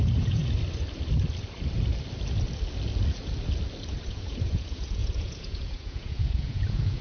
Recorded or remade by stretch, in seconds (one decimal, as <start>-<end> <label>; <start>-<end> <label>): 0.0-0.4 remade; 0.4-4.1 recorded; 4.1-7.0 remade